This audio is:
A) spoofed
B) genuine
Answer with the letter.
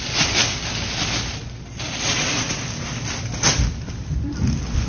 B